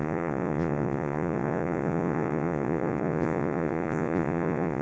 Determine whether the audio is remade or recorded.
remade